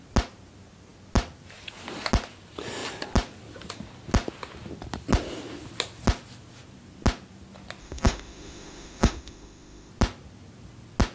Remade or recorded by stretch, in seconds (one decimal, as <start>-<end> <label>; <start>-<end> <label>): 0.0-7.8 recorded; 7.8-9.9 remade; 9.9-11.1 recorded